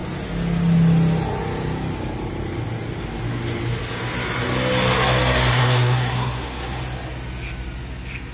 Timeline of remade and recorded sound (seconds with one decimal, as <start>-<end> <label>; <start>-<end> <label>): 0.0-5.5 recorded; 5.5-6.8 remade; 6.8-8.3 recorded